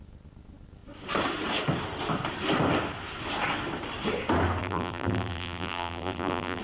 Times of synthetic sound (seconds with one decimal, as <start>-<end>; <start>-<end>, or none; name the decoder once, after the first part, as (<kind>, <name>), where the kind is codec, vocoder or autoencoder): 4.6-6.6 (vocoder, BigVGAN v2)